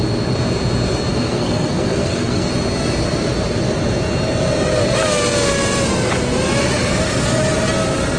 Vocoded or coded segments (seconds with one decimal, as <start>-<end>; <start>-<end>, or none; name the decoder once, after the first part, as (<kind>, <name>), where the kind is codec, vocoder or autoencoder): 1.1-2.5 (codec, SNAC)